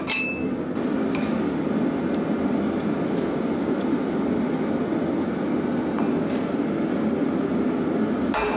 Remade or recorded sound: recorded